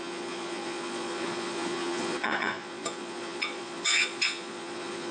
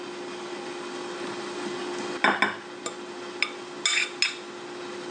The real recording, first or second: second